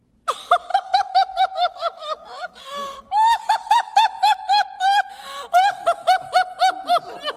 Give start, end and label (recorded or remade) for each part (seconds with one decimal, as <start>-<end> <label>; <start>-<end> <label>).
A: 0.0-0.7 recorded; 0.7-5.1 remade; 5.1-7.4 recorded